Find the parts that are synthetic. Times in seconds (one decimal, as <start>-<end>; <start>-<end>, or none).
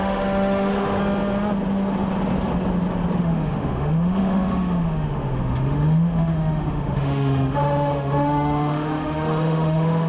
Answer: 0.0-1.0; 3.2-10.1